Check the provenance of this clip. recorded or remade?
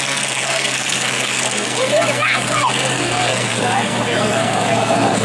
remade